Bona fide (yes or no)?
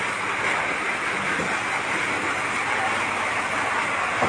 yes